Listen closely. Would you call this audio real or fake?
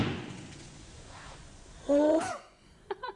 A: fake